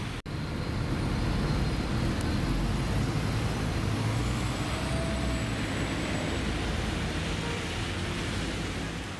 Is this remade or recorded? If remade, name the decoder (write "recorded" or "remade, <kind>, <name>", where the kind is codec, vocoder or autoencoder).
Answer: recorded